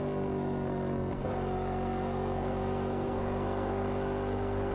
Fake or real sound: fake